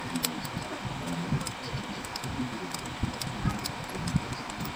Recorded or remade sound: recorded